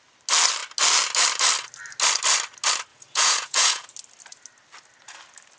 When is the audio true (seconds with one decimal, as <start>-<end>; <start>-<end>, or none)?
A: 0.0-2.9; 3.9-5.6